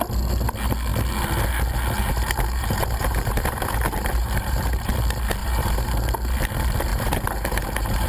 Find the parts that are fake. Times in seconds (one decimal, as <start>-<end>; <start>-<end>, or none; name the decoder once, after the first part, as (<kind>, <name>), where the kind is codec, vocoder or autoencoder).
2.0-4.9 (vocoder, BigVGAN v2); 5.4-5.9; 6.9-8.1